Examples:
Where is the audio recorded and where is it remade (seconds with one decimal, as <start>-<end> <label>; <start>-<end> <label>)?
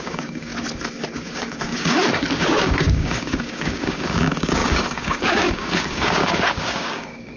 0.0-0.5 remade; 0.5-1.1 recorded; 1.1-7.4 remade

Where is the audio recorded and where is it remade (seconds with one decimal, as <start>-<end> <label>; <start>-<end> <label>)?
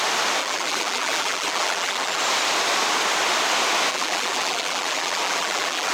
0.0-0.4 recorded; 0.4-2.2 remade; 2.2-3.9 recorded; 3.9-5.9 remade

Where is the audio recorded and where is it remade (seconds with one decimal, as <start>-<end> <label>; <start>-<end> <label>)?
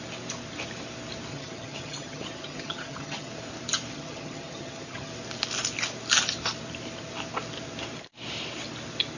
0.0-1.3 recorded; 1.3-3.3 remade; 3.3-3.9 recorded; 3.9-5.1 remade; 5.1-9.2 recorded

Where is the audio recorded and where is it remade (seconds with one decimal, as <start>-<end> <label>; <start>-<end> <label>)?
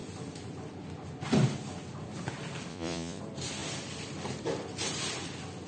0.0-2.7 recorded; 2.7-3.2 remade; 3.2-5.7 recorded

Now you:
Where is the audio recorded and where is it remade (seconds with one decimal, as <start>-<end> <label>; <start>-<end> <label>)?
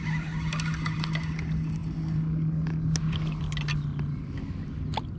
0.0-5.2 recorded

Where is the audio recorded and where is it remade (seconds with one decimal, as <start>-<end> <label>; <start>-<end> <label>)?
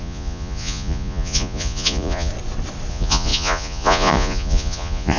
0.0-2.3 remade; 2.3-2.9 recorded; 2.9-5.2 remade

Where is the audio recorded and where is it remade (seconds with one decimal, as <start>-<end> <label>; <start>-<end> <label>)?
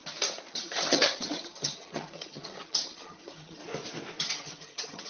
0.0-0.5 recorded; 0.5-3.6 remade; 3.6-4.2 recorded; 4.2-5.1 remade